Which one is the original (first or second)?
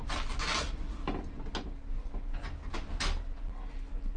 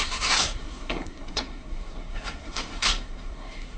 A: first